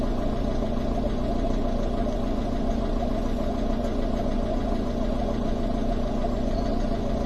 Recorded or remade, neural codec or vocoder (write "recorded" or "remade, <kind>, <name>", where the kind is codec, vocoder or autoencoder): remade, vocoder, Vocos